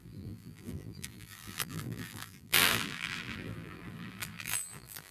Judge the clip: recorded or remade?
remade